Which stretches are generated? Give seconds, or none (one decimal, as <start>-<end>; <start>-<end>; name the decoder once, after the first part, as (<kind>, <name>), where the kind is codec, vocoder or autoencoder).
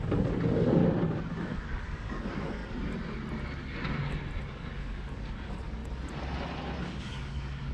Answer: 0.0-0.8 (codec, DAC); 1.3-2.6; 4.5-5.8; 6.8-7.7